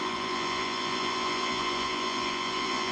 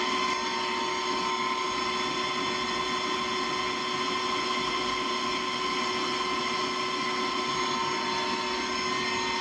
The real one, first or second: second